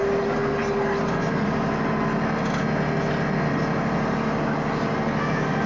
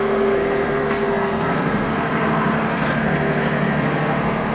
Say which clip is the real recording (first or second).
first